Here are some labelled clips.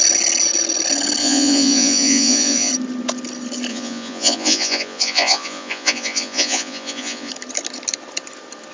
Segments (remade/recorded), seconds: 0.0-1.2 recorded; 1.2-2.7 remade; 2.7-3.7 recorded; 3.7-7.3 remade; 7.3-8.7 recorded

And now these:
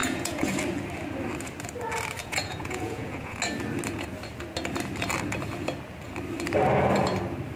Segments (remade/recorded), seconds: 0.0-0.6 remade; 0.6-2.2 recorded; 2.2-3.4 remade; 3.4-7.6 recorded

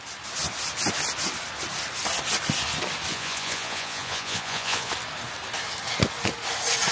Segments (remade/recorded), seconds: 0.0-3.1 recorded; 3.1-4.9 remade; 4.9-6.9 recorded

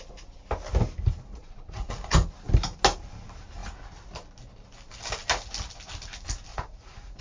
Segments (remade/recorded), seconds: 0.0-1.3 recorded; 1.3-1.9 remade; 1.9-6.5 recorded; 6.5-7.2 remade

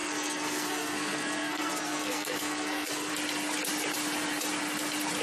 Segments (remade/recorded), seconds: 0.0-3.1 remade; 3.1-5.2 recorded

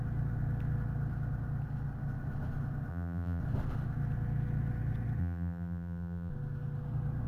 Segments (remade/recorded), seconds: 0.0-2.9 recorded; 2.9-3.4 remade; 3.4-5.2 recorded; 5.2-6.3 remade; 6.3-7.3 recorded